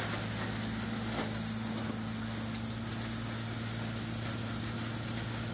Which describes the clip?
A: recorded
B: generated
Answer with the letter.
A